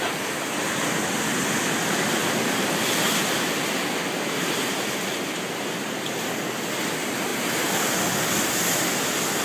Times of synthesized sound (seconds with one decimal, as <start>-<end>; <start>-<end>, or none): none